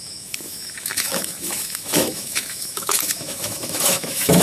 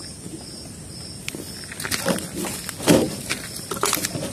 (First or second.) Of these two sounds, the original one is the second